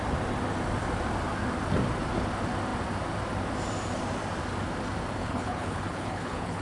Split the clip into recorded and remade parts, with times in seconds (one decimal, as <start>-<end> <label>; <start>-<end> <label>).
0.0-5.2 recorded; 5.2-6.6 remade